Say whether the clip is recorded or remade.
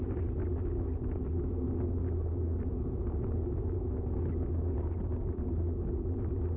recorded